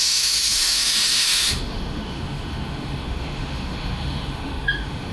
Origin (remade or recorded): remade